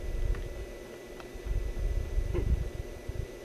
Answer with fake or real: real